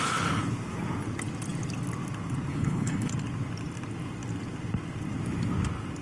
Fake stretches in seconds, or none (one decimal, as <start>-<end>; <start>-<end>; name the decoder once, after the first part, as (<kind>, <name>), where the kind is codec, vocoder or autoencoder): 2.5-3.1 (codec, HILCodec)